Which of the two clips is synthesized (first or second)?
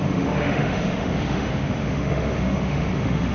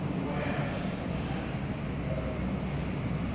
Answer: first